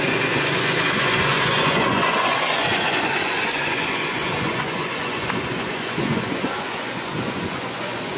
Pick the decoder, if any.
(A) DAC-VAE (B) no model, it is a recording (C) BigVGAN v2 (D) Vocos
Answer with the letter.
D